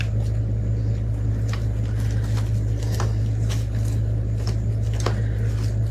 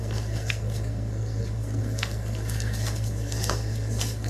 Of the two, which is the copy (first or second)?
second